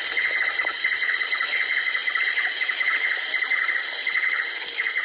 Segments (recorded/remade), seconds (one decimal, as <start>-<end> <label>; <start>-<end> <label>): 0.0-5.0 recorded